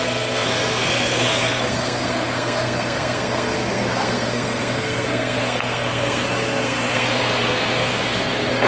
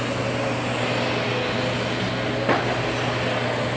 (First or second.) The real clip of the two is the second